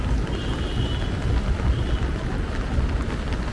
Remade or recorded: recorded